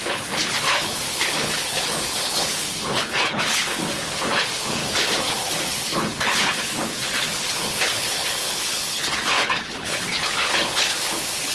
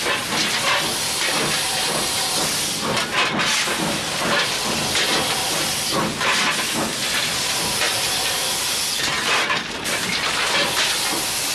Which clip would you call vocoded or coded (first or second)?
first